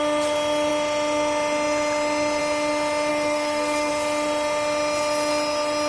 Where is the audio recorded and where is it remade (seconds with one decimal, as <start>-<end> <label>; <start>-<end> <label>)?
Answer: 0.0-3.1 recorded; 3.1-3.9 remade; 3.9-5.9 recorded